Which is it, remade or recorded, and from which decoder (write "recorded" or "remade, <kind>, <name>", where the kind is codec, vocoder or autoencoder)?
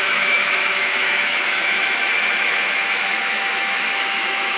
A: remade, autoencoder, DAC-VAE